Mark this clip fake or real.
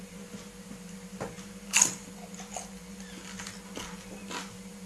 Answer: real